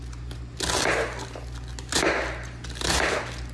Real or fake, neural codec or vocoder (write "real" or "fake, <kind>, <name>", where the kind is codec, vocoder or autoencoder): real